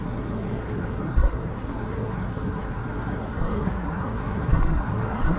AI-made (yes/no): yes